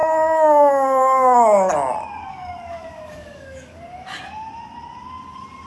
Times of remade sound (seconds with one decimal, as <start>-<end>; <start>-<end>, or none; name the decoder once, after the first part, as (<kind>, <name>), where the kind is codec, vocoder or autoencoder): 0.0-1.7 (codec, DAC); 2.2-4.2